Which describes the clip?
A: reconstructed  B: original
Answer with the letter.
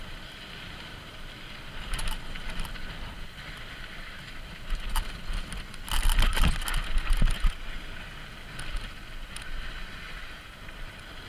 B